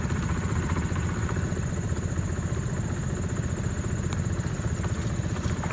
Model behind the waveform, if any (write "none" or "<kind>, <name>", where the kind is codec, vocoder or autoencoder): none